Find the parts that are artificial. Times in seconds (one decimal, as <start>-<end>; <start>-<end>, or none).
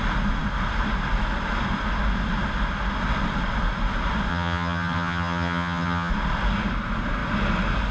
4.3-6.1